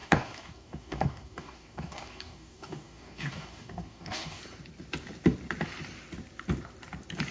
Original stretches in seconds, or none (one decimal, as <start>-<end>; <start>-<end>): 4.4-7.3